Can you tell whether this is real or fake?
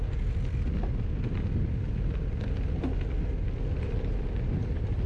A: real